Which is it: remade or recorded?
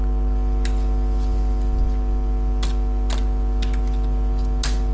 recorded